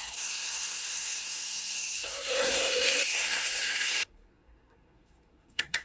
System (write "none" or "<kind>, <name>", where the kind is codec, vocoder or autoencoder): codec, SNAC